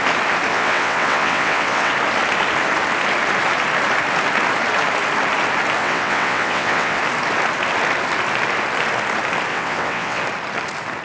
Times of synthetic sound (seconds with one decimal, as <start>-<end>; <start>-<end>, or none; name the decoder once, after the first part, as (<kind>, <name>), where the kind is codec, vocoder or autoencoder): 0.5-1.9 (vocoder, WaveNeXt); 5.8-7.0; 9.5-10.2